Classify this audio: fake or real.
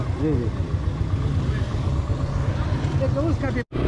real